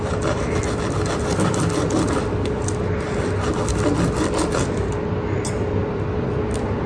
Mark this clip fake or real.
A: real